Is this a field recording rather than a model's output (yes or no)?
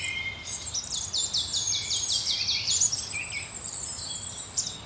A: no